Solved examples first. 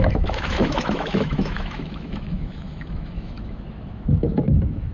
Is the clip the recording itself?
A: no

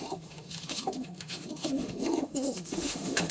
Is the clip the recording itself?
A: no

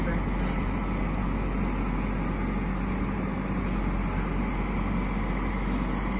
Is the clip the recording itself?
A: yes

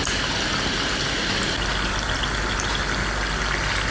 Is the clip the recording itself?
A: yes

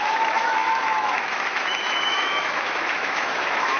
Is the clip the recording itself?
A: no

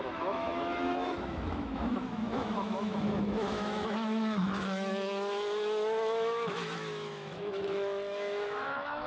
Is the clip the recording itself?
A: no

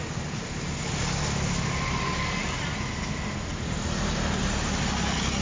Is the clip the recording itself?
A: yes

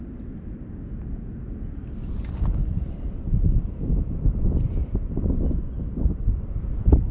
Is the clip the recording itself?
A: yes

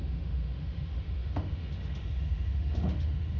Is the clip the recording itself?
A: no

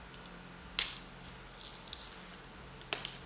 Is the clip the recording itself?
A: yes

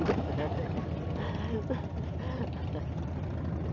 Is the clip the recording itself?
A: yes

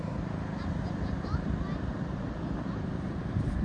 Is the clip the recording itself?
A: yes